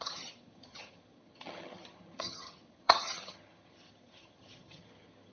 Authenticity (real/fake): fake